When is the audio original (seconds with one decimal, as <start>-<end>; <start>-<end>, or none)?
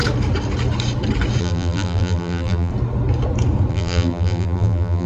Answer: 0.0-1.4; 2.7-3.7